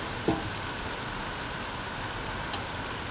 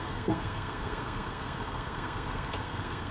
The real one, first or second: first